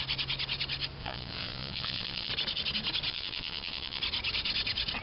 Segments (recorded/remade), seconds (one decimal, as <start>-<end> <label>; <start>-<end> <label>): 0.0-1.0 recorded; 1.0-2.3 remade; 2.3-3.1 recorded; 3.1-4.0 remade; 4.0-5.0 recorded